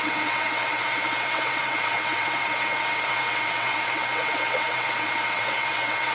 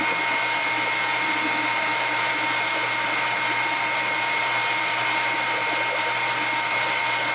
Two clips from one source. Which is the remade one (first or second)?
first